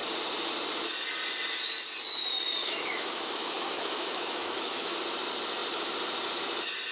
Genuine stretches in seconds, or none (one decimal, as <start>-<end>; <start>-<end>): 0.0-2.6; 5.0-6.9